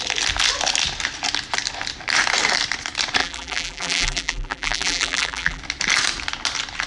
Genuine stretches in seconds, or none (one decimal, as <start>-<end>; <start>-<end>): 0.0-3.2; 5.6-6.9